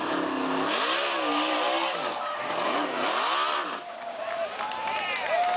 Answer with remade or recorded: recorded